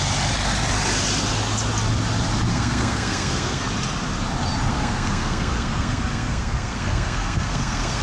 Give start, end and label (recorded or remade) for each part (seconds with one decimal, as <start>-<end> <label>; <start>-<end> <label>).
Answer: 0.0-2.5 recorded; 2.5-3.6 remade; 3.6-4.7 recorded; 4.7-8.0 remade